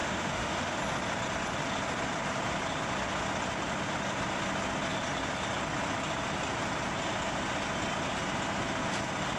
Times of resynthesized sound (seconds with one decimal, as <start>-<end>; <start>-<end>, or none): 0.0-0.8